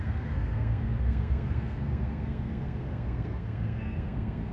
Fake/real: fake